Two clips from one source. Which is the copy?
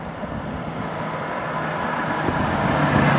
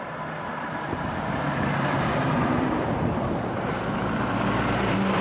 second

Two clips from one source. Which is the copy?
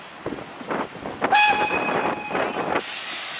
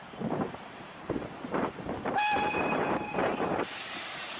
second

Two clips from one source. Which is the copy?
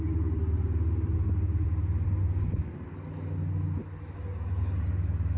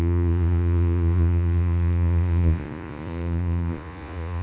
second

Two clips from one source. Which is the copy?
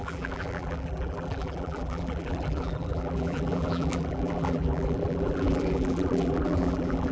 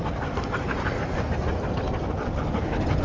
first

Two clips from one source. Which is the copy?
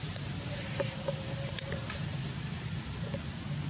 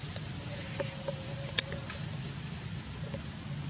first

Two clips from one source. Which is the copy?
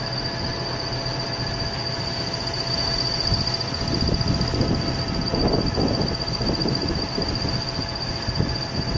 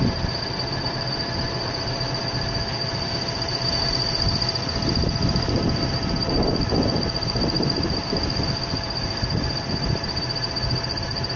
second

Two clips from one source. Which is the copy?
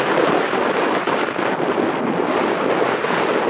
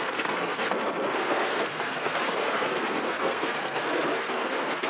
second